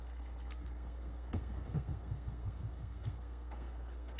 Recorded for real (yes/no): no